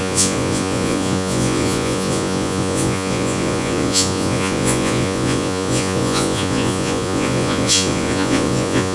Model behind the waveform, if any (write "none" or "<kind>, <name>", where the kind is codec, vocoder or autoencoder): vocoder, Vocos